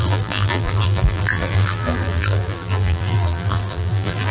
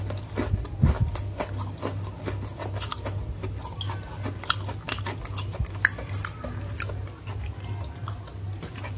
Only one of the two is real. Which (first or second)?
second